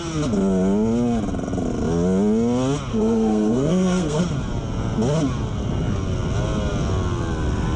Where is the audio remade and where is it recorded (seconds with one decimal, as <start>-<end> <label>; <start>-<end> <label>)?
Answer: 0.0-2.9 recorded; 2.9-4.2 remade; 4.2-7.8 recorded